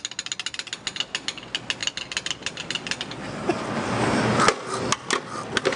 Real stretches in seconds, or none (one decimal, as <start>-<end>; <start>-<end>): 0.0-5.8